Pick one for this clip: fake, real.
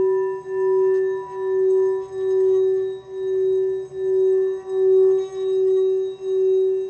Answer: real